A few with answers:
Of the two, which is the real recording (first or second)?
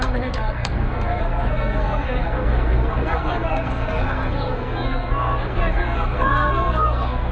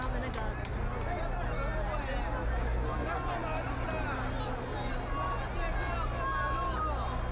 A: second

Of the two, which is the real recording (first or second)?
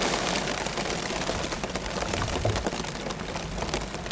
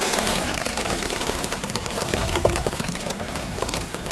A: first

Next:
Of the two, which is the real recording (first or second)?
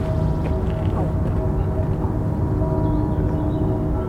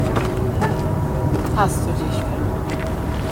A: first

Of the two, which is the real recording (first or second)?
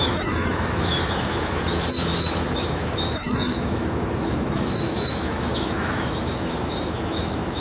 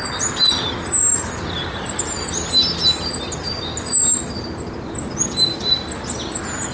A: second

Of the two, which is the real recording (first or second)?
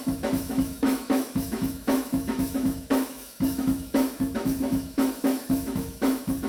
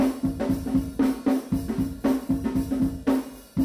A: second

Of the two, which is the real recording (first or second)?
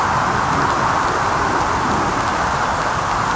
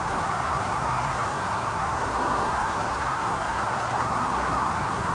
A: first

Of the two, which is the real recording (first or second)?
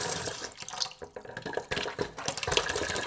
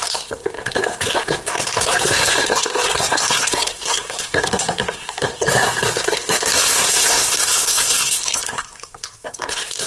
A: first